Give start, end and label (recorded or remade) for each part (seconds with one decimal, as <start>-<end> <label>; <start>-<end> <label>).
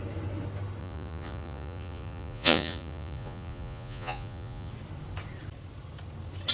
0.0-0.8 recorded; 0.8-4.7 remade; 4.7-6.5 recorded